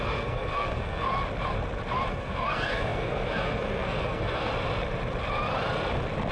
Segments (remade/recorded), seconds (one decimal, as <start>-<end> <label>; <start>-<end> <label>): 0.0-1.1 remade; 1.1-2.1 recorded; 2.1-4.5 remade; 4.5-6.3 recorded